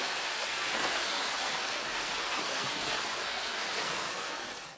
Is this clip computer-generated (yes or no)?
yes